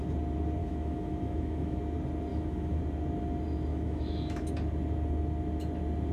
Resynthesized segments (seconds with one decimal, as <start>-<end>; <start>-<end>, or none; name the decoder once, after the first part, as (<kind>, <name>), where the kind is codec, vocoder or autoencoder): 0.6-1.8 (autoencoder, DAC-VAE); 2.3-2.8; 3.7-4.5